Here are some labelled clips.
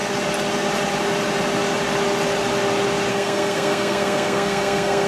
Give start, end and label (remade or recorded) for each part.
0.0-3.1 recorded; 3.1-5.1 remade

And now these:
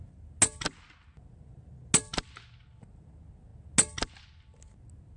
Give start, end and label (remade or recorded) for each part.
0.0-5.2 recorded

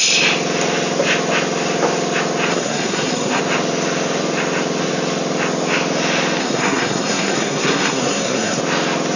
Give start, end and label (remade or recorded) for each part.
0.0-2.5 recorded; 2.5-3.4 remade; 3.4-6.4 recorded; 6.4-8.6 remade; 8.6-9.2 recorded